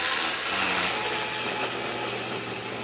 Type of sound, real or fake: real